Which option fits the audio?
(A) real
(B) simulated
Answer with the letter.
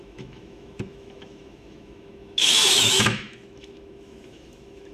B